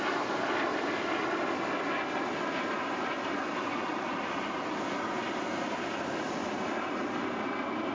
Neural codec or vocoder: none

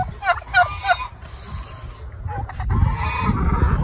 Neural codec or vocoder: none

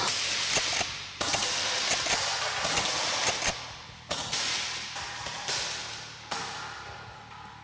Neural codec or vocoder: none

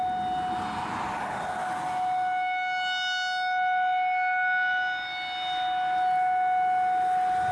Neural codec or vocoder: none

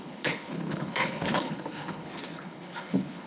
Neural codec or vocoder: codec, HILCodec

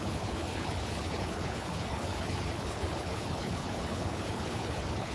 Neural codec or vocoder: codec, HILCodec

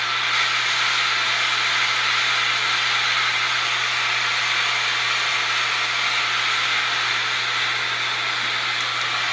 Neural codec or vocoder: none